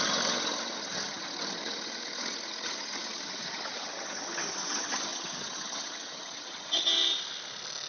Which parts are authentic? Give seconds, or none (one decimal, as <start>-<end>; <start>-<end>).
6.9-7.9